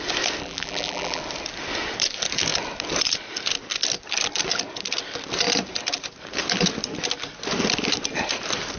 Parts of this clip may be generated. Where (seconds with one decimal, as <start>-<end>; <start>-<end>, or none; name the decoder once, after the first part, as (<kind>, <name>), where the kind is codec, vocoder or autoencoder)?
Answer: 0.4-1.2 (vocoder, BigVGAN v2)